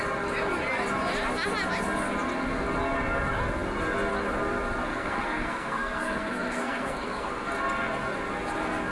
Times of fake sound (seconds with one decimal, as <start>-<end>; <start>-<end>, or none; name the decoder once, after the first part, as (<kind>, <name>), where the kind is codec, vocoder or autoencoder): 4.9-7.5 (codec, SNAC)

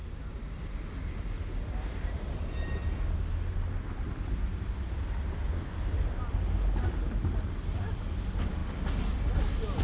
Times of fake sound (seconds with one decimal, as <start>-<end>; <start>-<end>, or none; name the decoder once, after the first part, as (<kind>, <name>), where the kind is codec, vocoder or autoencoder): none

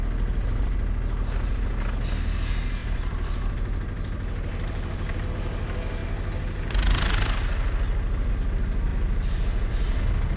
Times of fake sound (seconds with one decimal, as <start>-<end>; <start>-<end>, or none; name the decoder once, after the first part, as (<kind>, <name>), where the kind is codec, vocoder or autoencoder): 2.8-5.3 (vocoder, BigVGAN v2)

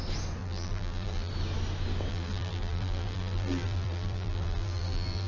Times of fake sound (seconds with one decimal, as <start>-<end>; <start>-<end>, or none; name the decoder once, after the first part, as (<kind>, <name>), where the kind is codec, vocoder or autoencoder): 0.4-1.3 (vocoder, BigVGAN v2); 2.1-5.3